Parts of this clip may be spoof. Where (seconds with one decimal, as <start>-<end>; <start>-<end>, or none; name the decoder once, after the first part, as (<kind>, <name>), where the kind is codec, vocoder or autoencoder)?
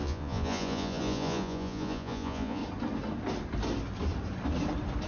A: 0.0-2.6 (vocoder, Vocos)